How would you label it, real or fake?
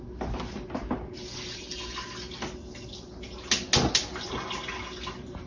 real